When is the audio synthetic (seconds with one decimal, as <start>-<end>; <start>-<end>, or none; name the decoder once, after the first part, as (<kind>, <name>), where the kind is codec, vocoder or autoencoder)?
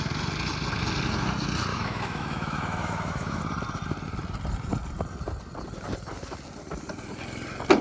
1.7-3.4 (autoencoder, DAC-VAE)